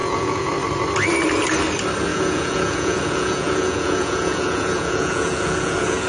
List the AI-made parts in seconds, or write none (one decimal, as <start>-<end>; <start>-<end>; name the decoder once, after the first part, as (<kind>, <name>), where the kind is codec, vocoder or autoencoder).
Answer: 0.0-0.5 (vocoder, Vocos); 2.1-6.1